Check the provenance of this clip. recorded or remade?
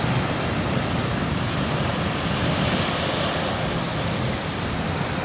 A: recorded